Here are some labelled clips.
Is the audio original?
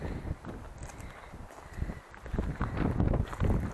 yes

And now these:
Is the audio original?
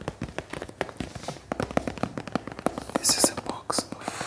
yes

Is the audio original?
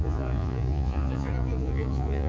no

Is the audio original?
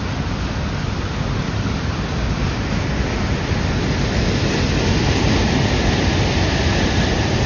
yes